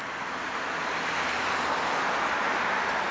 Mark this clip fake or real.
real